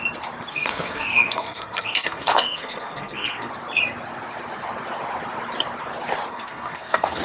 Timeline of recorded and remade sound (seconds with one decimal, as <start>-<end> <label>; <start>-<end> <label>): 0.0-0.5 recorded; 0.5-3.5 remade; 3.5-6.3 recorded; 6.3-7.2 remade